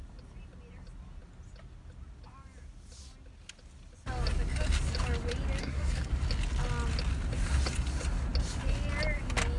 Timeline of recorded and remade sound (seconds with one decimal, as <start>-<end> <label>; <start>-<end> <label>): 0.0-5.6 recorded; 5.6-6.1 remade; 6.1-9.6 recorded